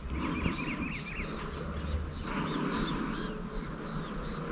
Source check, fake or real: real